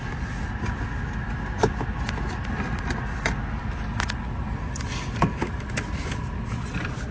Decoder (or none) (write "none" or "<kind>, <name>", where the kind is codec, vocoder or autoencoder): none